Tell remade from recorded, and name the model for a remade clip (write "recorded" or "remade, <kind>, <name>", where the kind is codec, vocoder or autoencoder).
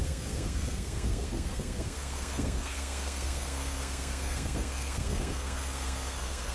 remade, codec, SNAC